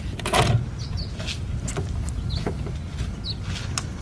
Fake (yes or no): no